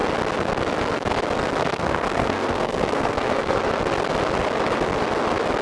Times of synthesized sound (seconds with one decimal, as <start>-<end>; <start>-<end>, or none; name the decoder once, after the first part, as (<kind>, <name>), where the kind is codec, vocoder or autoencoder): 1.6-3.6 (codec, SNAC)